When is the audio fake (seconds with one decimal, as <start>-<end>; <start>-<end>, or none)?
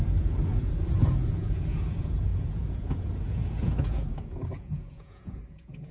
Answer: 0.0-5.9